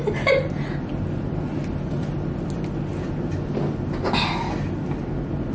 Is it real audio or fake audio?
real